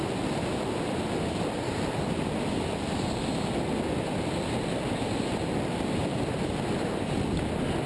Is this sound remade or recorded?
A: recorded